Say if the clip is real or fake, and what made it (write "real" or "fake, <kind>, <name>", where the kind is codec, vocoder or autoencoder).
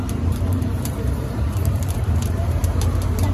fake, vocoder, BigVGAN v2